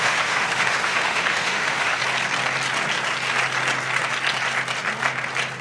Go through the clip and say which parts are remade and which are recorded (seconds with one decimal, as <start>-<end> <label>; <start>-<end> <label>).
0.0-2.0 remade; 2.0-5.6 recorded